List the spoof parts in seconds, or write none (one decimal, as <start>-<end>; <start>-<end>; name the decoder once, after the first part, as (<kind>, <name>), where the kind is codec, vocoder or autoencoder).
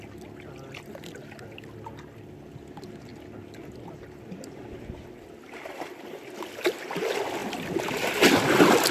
none